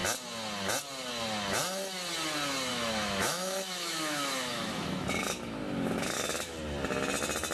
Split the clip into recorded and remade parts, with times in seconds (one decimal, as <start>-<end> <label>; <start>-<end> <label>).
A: 0.0-2.7 recorded; 2.7-6.5 remade; 6.5-7.5 recorded